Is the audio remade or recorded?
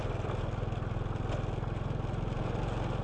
recorded